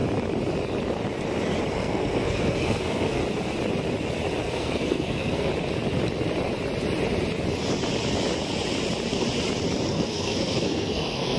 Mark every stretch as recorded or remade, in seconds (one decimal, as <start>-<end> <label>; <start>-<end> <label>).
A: 0.0-1.7 recorded; 1.7-3.2 remade; 3.2-4.4 recorded; 4.4-5.5 remade; 5.5-9.9 recorded; 9.9-11.4 remade